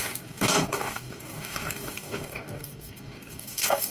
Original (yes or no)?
no